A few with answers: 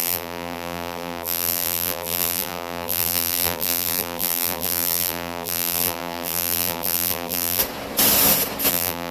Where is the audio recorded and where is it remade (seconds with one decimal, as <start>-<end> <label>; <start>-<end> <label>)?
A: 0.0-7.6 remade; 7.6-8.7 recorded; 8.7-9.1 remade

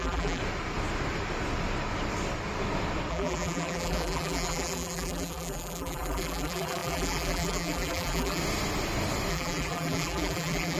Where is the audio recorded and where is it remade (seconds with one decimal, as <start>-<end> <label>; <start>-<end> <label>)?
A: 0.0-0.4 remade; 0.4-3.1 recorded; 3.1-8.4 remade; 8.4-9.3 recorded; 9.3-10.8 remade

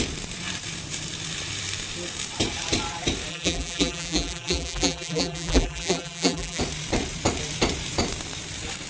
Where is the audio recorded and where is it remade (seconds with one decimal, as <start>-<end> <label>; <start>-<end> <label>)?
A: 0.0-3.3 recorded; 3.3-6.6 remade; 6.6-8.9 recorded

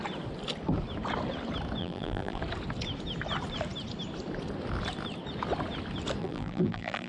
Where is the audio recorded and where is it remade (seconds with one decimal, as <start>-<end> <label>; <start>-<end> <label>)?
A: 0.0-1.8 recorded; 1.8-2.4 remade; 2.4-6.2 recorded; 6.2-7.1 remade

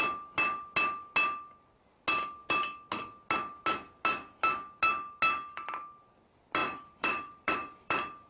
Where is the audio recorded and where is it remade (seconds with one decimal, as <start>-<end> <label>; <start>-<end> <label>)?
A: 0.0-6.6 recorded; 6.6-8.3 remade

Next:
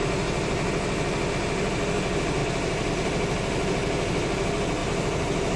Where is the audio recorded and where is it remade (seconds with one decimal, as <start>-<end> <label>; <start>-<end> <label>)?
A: 0.0-2.4 recorded; 2.4-2.9 remade; 2.9-4.8 recorded; 4.8-5.6 remade

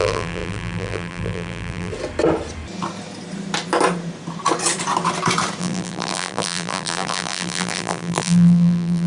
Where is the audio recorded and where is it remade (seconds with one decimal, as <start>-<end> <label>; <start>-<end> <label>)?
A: 0.0-1.9 remade; 1.9-5.6 recorded; 5.6-9.1 remade

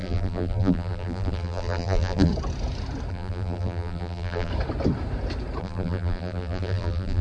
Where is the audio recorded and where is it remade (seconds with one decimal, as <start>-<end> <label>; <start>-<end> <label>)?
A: 0.0-2.3 remade; 2.3-3.1 recorded; 3.1-4.5 remade; 4.5-5.6 recorded; 5.6-7.2 remade